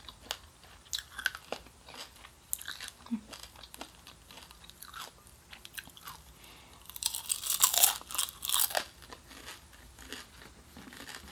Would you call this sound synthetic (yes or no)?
no